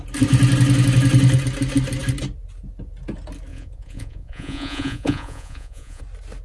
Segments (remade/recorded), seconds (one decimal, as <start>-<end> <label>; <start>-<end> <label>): 0.0-3.5 recorded; 3.5-6.0 remade; 6.0-6.4 recorded